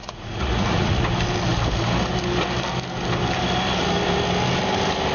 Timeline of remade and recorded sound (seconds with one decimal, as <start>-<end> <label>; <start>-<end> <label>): 0.0-1.0 remade; 1.0-5.1 recorded